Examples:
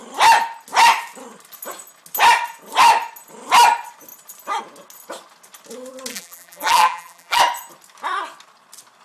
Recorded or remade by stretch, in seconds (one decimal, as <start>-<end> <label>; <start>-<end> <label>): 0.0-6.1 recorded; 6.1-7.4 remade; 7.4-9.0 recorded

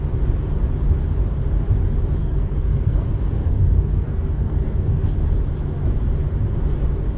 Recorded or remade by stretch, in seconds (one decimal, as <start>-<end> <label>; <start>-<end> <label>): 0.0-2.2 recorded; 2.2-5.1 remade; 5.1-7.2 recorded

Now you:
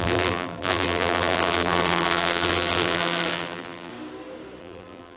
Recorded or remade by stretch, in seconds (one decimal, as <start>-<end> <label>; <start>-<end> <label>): 0.0-3.9 remade; 3.9-4.6 recorded; 4.6-5.2 remade

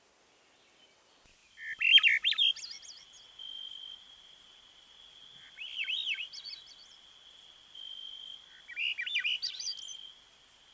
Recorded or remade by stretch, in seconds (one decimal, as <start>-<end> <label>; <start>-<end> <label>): 0.0-10.7 recorded

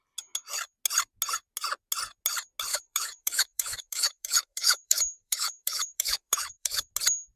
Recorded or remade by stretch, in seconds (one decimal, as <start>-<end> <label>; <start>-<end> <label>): 0.0-2.7 recorded; 2.7-6.9 remade; 6.9-7.4 recorded